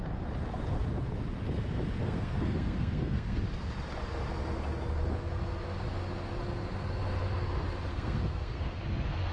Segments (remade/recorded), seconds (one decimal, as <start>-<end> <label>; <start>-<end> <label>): 0.0-2.0 recorded; 2.0-3.4 remade; 3.4-7.9 recorded; 7.9-8.8 remade; 8.8-9.3 recorded